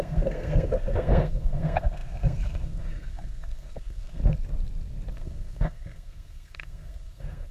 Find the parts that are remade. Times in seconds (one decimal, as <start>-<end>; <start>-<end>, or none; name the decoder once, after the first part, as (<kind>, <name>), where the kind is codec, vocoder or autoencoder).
0.0-4.2 (codec, SNAC); 5.1-7.5